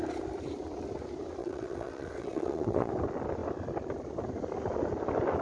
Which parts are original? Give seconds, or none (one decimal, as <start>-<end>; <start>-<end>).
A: 0.0-1.4; 2.9-5.4